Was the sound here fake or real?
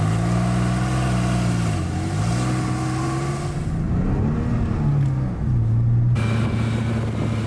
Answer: real